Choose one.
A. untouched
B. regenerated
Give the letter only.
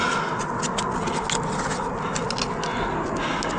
A